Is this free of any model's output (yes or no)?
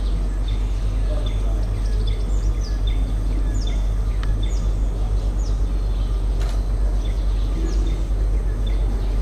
yes